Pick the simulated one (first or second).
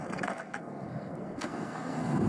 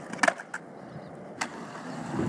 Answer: first